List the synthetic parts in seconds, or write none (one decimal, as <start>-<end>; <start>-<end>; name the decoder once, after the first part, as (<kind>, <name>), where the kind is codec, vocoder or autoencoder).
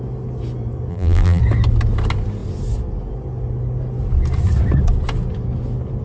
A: 0.9-1.4 (vocoder, BigVGAN v2)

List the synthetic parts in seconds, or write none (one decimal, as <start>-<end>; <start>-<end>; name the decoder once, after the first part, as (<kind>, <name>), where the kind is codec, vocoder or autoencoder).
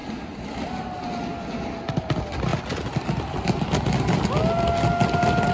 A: none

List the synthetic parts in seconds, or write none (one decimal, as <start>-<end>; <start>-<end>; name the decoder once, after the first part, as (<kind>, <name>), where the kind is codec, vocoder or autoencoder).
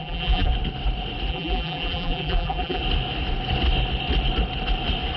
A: 0.0-0.5 (vocoder, BigVGAN v2); 1.3-2.8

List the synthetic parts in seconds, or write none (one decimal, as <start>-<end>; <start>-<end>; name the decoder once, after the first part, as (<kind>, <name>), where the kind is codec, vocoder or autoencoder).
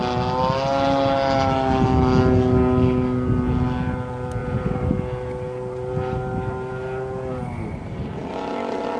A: 4.4-4.9 (vocoder, BigVGAN v2)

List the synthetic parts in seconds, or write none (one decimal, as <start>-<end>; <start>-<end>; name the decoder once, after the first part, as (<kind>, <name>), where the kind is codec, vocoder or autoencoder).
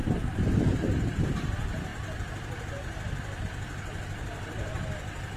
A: 0.0-1.3 (vocoder, BigVGAN v2)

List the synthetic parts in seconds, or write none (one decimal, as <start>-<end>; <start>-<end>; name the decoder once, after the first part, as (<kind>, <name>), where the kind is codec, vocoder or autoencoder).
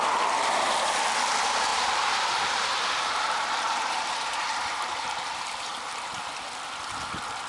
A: 1.7-6.2 (vocoder, BigVGAN v2)